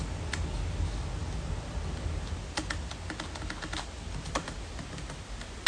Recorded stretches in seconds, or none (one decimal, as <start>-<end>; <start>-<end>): 0.0-5.7